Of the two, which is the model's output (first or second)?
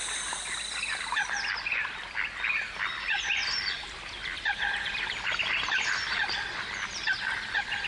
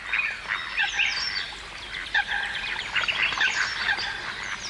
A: first